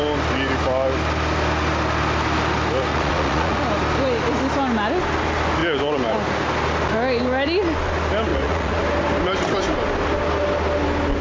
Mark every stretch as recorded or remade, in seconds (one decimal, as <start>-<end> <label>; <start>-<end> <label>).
0.0-2.9 recorded; 2.9-3.6 remade; 3.6-8.3 recorded; 8.3-8.8 remade; 8.8-11.2 recorded